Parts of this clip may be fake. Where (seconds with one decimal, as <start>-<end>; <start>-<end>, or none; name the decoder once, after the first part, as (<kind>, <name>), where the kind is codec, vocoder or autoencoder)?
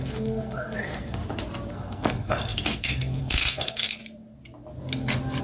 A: 0.0-1.2 (codec, SNAC); 1.7-4.0